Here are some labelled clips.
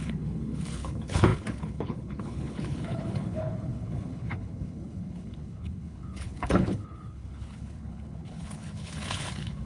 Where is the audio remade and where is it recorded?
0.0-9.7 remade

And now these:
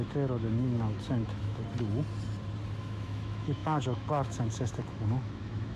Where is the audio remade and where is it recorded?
0.0-1.6 remade; 1.6-2.8 recorded; 2.8-5.8 remade

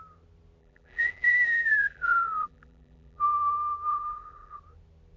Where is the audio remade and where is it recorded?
0.0-0.6 recorded; 0.6-3.2 remade; 3.2-3.9 recorded; 3.9-4.6 remade; 4.6-5.2 recorded